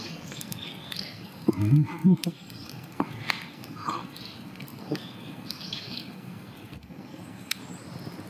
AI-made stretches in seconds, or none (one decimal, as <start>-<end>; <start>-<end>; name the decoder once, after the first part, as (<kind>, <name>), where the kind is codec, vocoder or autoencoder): 0.0-7.6 (codec, SNAC)